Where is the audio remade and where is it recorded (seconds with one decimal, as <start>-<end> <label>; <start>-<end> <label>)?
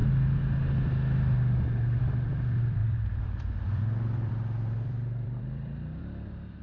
0.0-2.0 recorded; 2.0-6.6 remade